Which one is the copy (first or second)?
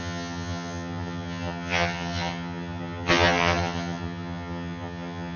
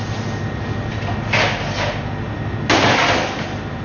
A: first